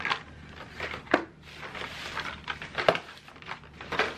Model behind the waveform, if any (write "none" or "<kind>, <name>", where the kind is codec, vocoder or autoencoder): vocoder, BigVGAN v2